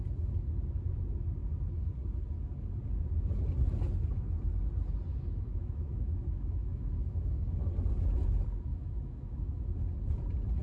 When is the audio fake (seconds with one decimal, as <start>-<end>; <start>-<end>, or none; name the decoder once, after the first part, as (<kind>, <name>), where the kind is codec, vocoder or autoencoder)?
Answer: 5.1-7.7 (autoencoder, DAC-VAE); 8.7-9.8